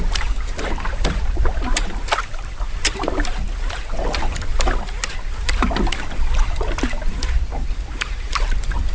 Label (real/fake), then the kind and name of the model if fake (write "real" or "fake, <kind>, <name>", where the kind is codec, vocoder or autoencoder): real